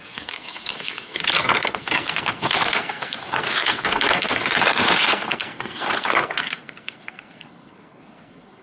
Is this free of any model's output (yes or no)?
no